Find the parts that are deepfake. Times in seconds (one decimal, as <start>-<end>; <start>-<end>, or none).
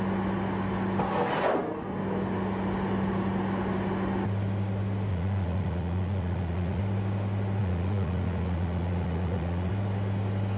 5.1-6.8; 7.6-9.7